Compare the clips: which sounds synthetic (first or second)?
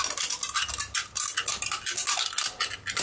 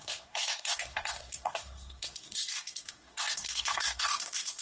second